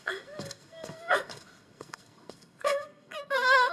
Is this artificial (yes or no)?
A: yes